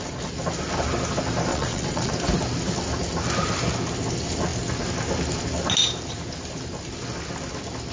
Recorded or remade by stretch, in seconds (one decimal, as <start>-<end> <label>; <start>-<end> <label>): 0.0-1.5 recorded; 1.5-2.1 remade; 2.1-7.9 recorded